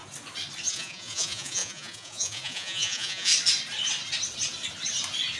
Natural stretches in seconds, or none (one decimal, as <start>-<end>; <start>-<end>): 0.0-0.7; 3.3-5.4